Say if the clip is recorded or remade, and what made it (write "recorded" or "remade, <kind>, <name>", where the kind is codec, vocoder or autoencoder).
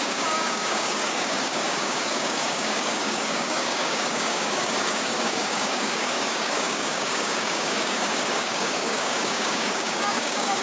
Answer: remade, codec, DAC